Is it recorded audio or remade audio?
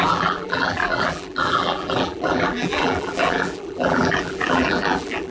remade